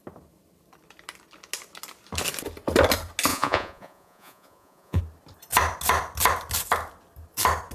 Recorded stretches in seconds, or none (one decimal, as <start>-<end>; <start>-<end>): 0.0-3.3; 5.0-7.7